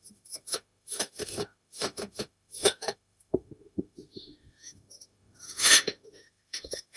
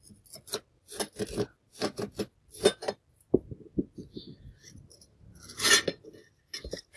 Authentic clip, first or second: second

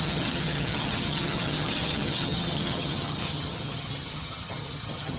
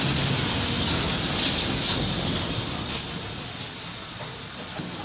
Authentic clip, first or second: second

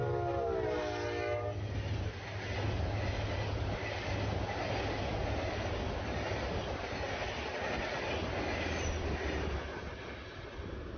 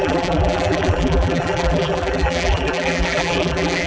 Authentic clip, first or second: first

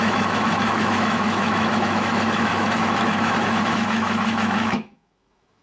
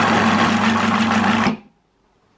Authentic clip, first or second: second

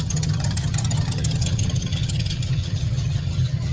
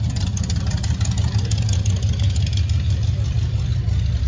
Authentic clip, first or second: second